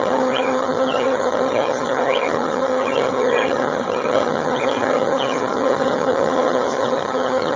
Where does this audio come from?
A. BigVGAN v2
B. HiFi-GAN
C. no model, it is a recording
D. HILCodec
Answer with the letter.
B